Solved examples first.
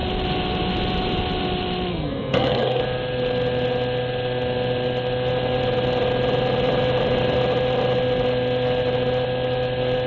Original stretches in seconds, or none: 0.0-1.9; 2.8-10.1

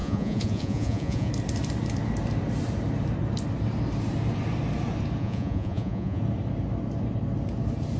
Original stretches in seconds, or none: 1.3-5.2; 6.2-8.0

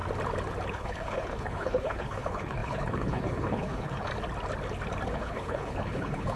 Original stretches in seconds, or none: 0.0-0.7; 4.1-5.1